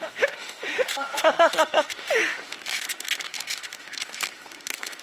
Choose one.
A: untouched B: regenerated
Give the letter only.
B